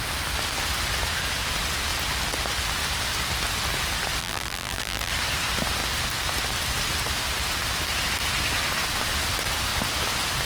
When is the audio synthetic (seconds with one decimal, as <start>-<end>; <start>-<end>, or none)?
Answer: 4.2-5.1